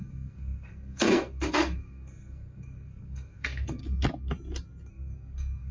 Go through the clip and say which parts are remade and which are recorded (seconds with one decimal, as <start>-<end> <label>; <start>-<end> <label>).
0.0-3.8 remade; 3.8-4.9 recorded; 4.9-5.7 remade